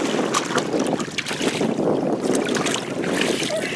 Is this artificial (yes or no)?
no